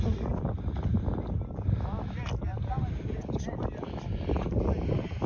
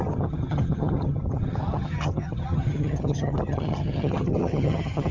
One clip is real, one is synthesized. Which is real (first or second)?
first